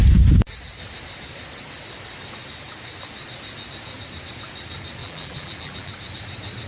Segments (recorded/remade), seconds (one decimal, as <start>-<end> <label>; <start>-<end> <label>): 0.0-5.0 recorded; 5.0-5.9 remade; 5.9-6.7 recorded